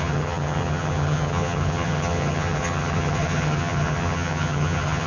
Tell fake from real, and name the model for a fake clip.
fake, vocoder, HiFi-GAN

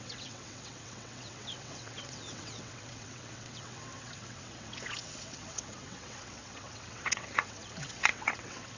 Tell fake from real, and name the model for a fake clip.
fake, vocoder, WaveNeXt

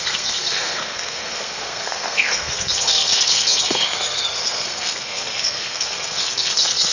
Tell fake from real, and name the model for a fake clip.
fake, codec, SNAC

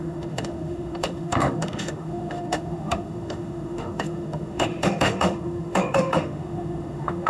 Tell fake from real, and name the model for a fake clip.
fake, autoencoder, DAC-VAE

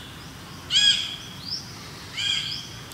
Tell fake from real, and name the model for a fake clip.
real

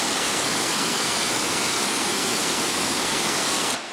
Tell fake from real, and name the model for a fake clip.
fake, codec, SNAC